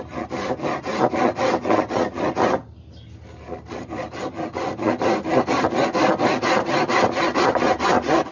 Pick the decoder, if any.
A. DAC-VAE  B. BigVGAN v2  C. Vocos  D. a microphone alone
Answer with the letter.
D